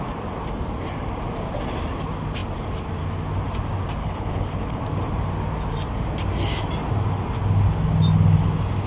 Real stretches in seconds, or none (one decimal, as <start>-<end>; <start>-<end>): 0.0-4.0; 4.8-8.9